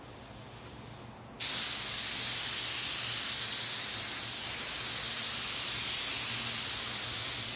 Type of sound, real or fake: real